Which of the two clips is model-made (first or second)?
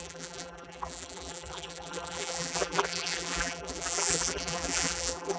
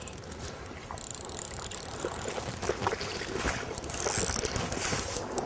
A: first